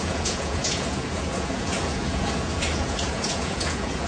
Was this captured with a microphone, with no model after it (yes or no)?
no